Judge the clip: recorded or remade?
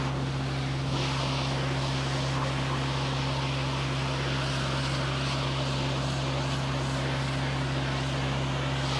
recorded